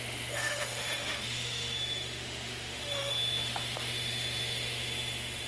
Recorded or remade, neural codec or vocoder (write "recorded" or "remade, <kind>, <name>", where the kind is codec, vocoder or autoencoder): remade, autoencoder, DAC-VAE